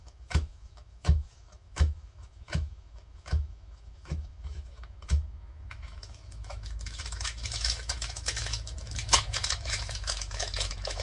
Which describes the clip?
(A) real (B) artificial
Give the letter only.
B